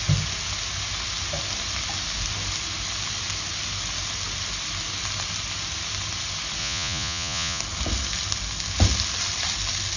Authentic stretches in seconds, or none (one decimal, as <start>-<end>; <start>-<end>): 0.0-6.6; 7.6-10.0